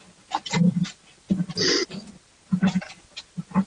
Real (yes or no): yes